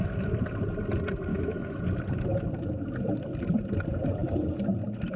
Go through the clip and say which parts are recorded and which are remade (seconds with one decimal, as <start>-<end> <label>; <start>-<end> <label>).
0.0-1.3 recorded; 1.3-1.8 remade; 1.8-5.2 recorded